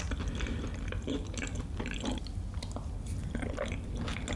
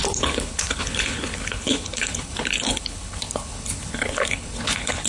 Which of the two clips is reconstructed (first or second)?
second